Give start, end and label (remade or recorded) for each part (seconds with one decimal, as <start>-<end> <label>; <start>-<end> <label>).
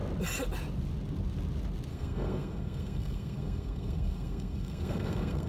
0.0-1.9 recorded; 1.9-5.5 remade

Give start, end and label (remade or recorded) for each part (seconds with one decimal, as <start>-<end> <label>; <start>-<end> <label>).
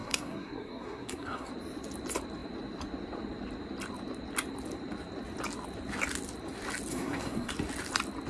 0.0-1.5 remade; 1.5-6.9 recorded; 6.9-7.5 remade; 7.5-8.3 recorded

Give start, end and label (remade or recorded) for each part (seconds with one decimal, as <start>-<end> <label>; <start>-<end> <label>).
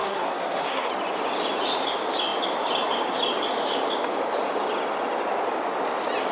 0.0-0.9 remade; 0.9-6.3 recorded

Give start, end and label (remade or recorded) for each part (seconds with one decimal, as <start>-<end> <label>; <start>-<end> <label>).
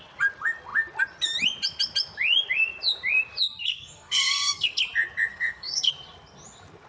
0.0-3.6 recorded; 3.6-4.8 remade; 4.8-5.3 recorded; 5.3-5.9 remade; 5.9-6.9 recorded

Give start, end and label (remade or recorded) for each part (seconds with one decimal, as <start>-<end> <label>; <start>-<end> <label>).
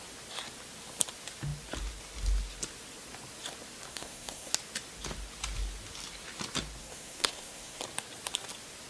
0.0-3.9 recorded; 3.9-4.5 remade; 4.5-6.8 recorded; 6.8-7.8 remade; 7.8-8.9 recorded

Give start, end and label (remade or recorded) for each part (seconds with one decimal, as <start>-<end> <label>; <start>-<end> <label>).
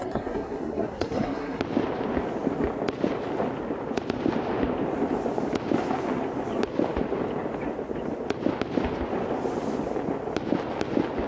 0.0-1.6 remade; 1.6-11.3 recorded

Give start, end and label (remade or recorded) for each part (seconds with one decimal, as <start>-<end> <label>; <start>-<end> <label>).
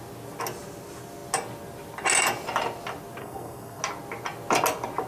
0.0-3.2 recorded; 3.2-3.8 remade; 3.8-5.1 recorded